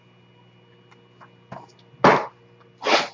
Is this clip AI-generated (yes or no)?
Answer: no